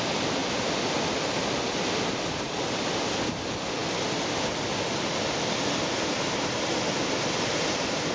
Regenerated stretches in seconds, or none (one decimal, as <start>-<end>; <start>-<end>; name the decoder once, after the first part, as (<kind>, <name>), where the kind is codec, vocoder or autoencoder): none